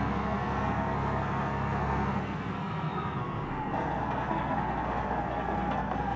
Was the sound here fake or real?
fake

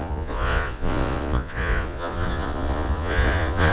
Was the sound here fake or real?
fake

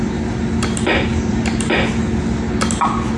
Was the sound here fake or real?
real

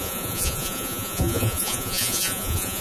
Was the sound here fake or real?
fake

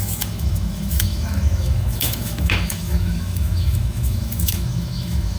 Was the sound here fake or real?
fake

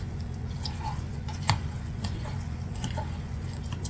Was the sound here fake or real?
fake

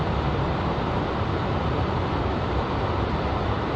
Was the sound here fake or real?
fake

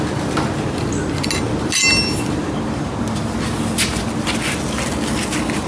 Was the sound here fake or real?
real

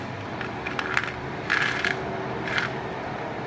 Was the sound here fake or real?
real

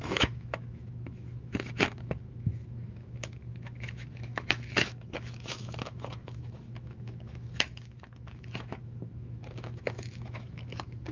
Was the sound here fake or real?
fake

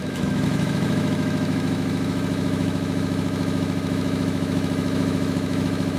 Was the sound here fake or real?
fake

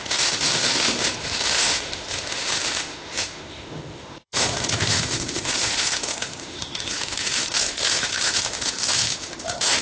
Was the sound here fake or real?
fake